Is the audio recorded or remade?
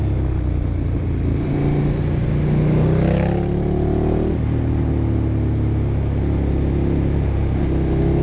recorded